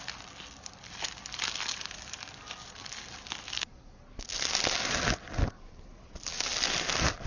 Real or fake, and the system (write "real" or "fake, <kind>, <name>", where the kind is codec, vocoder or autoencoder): real